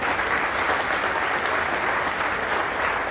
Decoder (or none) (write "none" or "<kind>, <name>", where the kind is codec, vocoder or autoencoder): none